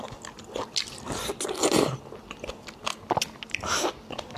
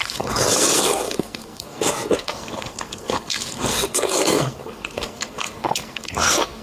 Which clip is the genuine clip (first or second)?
first